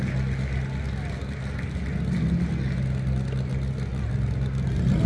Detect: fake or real real